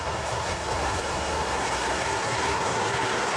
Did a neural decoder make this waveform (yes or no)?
yes